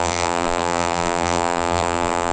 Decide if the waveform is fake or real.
fake